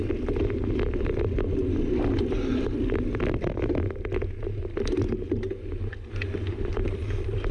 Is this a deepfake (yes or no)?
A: no